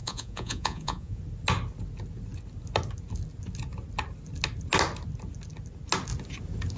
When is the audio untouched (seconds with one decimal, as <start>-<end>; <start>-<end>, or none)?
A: 1.2-6.8